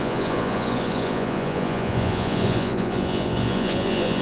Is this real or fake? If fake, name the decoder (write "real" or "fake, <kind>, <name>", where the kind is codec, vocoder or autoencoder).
fake, vocoder, Vocos